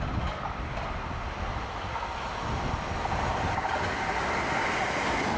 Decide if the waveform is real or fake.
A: real